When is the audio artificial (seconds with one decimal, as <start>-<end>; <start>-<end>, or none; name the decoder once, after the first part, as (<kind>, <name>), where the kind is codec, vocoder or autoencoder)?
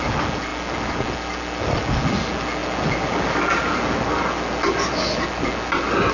none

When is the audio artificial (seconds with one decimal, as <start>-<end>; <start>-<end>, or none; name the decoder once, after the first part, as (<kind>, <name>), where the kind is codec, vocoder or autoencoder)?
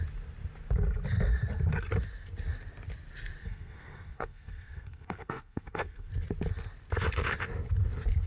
3.4-6.1 (codec, SNAC)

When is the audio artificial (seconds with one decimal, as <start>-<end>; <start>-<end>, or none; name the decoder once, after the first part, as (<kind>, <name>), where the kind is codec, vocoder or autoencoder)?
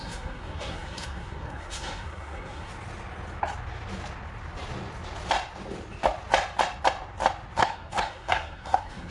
0.0-2.7 (codec, SNAC); 7.6-9.1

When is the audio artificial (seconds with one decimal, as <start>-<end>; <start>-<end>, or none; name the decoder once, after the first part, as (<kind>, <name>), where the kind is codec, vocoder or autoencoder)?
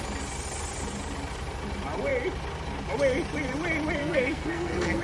4.0-5.0 (codec, SNAC)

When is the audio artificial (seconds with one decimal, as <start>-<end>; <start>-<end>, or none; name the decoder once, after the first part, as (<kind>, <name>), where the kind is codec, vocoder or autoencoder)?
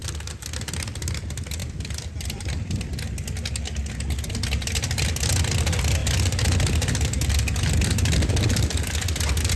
none